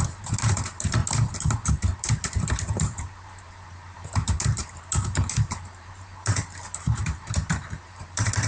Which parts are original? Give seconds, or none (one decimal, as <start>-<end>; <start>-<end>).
1.0-2.0